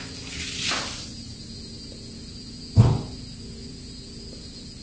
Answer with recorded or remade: recorded